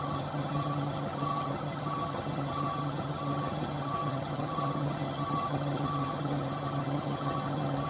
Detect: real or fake fake